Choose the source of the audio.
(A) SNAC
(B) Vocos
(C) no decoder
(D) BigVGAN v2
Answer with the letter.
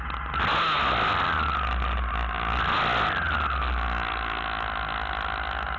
C